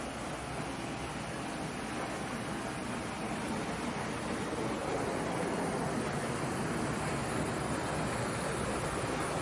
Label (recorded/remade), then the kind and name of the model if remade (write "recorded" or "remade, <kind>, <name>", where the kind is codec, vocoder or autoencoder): recorded